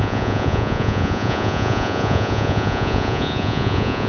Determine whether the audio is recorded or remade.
remade